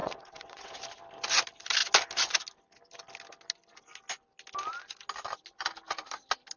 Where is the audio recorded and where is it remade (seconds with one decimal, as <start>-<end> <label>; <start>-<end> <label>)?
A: 0.0-0.8 remade; 0.8-6.6 recorded